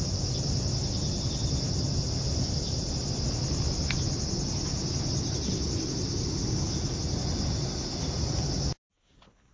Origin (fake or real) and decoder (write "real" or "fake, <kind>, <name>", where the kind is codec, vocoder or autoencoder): real